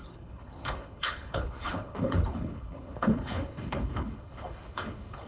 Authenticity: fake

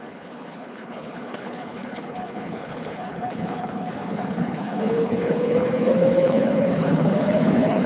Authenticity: fake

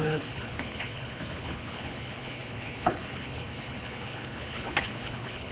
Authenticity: fake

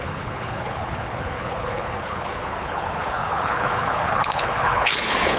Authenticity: fake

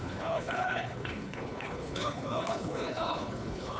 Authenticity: fake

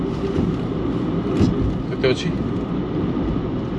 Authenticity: real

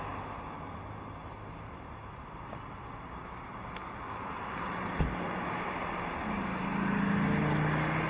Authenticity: real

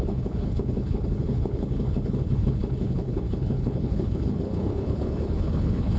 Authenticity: fake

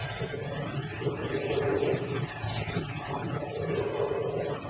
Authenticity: real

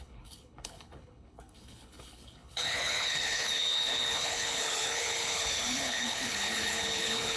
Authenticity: fake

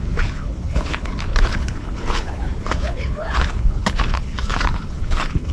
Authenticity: fake